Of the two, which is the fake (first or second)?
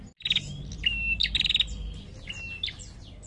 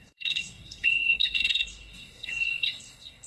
second